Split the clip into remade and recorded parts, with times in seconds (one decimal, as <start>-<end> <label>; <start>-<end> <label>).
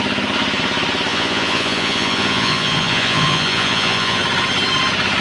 0.0-1.1 recorded; 1.1-4.2 remade; 4.2-5.2 recorded